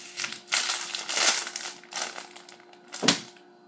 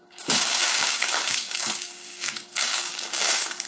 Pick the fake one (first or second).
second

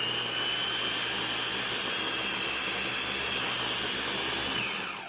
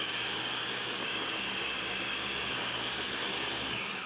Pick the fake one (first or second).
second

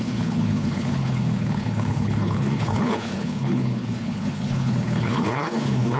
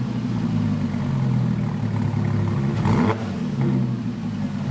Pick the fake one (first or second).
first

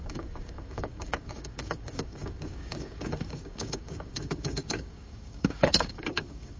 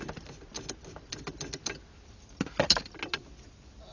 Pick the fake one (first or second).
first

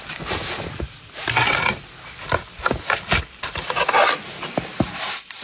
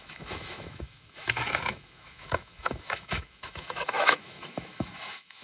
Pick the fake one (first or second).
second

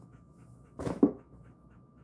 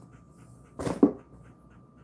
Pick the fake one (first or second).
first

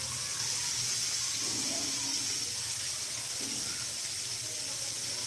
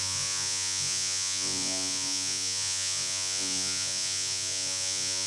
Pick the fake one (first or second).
second